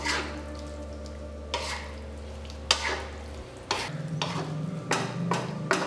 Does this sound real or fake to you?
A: real